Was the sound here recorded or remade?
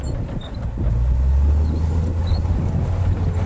recorded